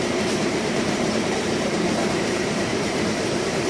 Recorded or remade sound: remade